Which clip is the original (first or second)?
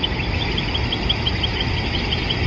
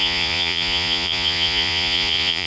first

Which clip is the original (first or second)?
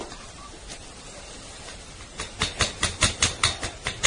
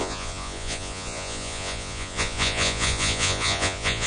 first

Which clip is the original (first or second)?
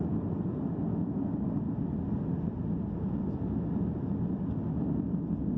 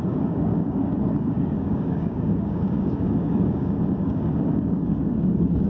first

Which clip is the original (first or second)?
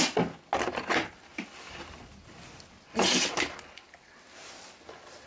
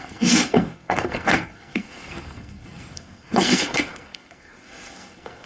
first